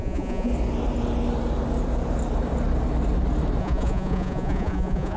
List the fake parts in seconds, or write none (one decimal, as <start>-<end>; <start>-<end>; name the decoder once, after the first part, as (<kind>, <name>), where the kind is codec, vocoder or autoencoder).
0.0-0.5 (vocoder, Vocos); 3.6-5.2